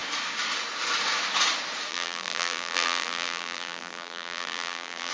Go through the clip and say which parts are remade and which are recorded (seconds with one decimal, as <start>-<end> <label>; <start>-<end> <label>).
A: 0.0-1.9 recorded; 1.9-5.1 remade